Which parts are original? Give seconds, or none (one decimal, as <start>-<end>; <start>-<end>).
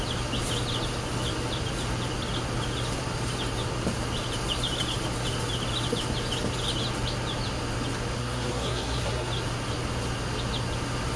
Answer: 0.0-8.2; 9.3-11.2